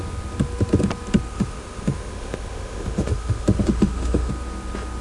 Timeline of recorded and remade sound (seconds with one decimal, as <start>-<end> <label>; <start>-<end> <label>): 0.0-1.3 recorded; 1.3-4.3 remade; 4.3-5.0 recorded